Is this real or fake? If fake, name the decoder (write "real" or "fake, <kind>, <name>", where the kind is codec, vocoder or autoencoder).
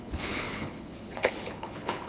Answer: fake, codec, HILCodec